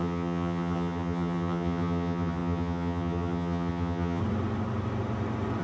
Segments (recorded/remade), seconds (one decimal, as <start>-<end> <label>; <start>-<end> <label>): 0.0-4.2 remade; 4.2-5.6 recorded